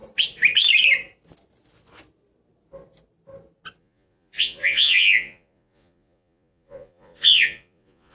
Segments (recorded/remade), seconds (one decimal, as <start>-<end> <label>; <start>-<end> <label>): 0.0-3.8 recorded; 3.8-8.1 remade